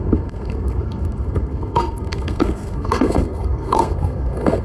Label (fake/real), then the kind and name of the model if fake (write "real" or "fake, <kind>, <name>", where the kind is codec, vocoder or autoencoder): fake, codec, SNAC